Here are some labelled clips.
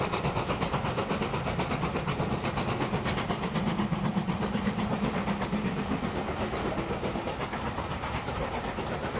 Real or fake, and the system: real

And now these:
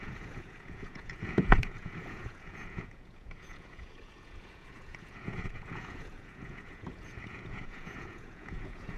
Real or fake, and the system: fake, vocoder, Vocos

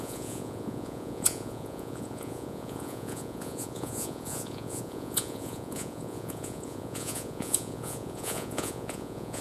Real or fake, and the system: fake, vocoder, Vocos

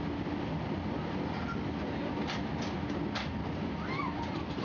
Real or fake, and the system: real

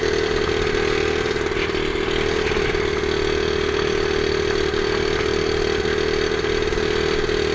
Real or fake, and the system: real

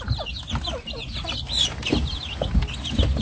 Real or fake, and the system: real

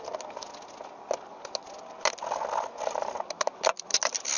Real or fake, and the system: real